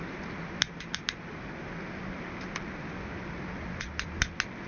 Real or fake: real